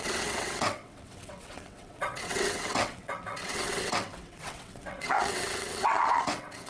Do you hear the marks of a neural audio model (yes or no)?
yes